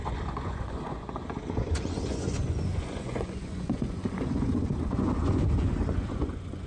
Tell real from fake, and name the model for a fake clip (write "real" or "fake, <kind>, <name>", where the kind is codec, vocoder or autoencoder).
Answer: fake, vocoder, Vocos